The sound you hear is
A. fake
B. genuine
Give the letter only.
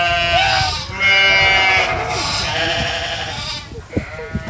B